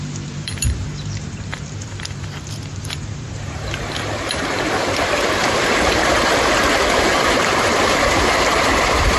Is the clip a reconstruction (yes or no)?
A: yes